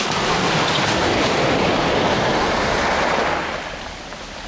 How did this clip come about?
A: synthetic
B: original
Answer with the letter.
B